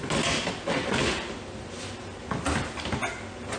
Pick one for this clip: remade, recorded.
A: recorded